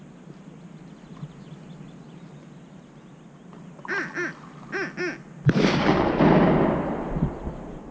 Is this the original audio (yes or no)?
yes